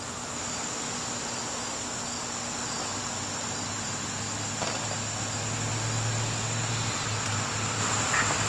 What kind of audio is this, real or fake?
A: real